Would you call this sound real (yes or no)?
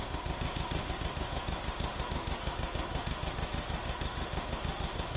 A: no